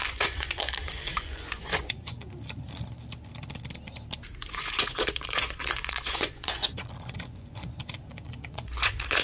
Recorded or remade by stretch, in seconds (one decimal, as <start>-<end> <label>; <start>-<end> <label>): 0.0-2.2 remade; 2.2-4.5 recorded; 4.5-9.2 remade